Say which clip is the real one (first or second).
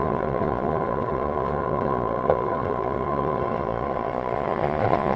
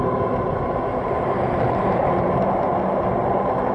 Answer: second